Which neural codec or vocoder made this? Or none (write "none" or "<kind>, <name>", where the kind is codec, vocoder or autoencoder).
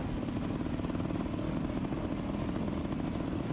none